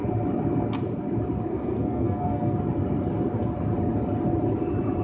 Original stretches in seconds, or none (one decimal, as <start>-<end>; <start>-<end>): 0.0-1.5; 2.6-5.0